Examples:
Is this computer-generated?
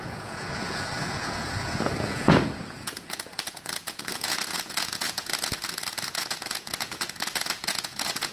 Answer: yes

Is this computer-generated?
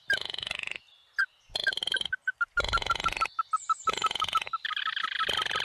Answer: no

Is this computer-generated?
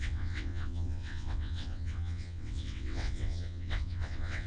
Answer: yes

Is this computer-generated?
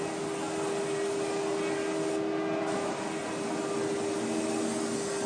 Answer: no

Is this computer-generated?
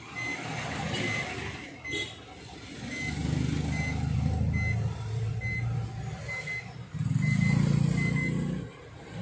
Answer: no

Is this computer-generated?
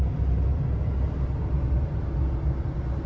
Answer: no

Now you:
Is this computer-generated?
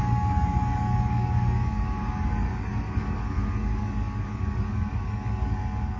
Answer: yes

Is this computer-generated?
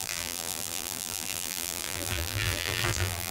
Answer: yes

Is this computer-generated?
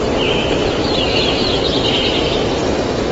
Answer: no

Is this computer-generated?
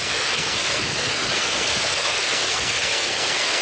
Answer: yes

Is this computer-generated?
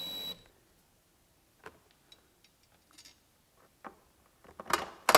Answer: no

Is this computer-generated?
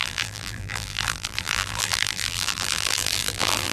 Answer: yes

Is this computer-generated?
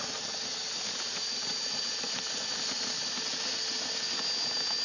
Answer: no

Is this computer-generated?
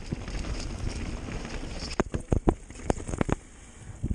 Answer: no